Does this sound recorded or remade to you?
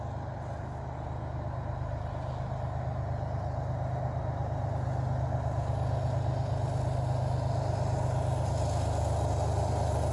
recorded